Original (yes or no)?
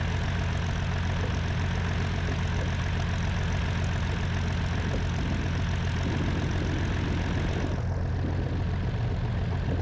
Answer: yes